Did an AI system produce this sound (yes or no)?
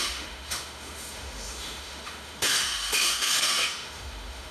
yes